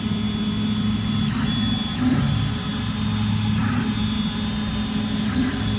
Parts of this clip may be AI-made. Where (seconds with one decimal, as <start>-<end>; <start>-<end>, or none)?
none

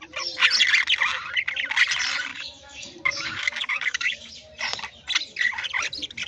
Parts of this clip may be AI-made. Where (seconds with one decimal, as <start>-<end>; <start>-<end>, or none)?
2.3-4.3

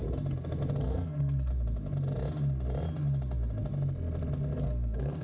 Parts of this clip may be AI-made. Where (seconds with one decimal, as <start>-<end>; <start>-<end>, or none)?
0.8-1.5; 4.6-5.2

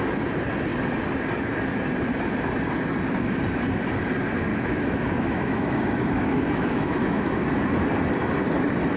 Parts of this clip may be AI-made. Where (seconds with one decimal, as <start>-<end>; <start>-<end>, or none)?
4.5-7.4